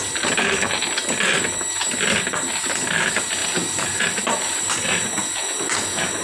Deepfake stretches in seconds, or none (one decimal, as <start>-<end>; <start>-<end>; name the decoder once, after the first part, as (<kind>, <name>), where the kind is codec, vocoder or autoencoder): 3.4-4.7 (vocoder, BigVGAN v2)